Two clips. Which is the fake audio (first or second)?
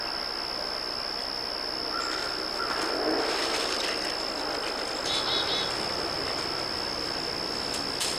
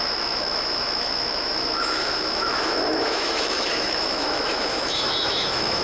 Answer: second